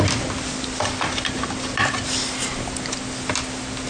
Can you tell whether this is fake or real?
real